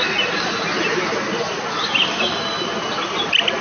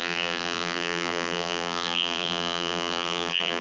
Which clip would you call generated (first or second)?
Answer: second